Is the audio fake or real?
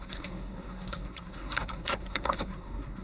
fake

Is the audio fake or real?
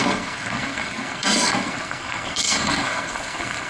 fake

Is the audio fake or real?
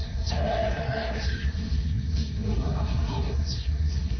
fake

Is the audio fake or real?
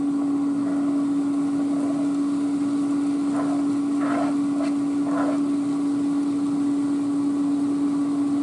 real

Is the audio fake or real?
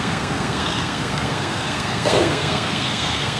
fake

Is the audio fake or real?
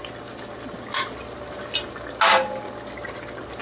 real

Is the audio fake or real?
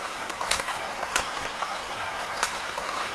fake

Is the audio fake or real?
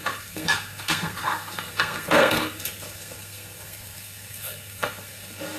fake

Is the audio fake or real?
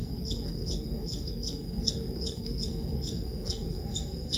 fake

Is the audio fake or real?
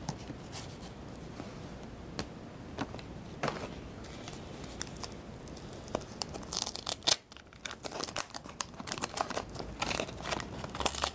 real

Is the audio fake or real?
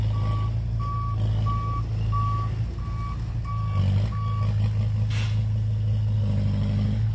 real